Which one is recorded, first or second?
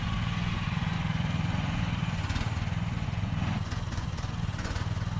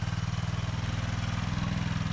second